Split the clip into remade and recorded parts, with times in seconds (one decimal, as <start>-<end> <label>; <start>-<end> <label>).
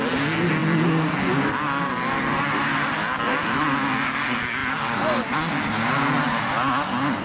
0.0-7.2 recorded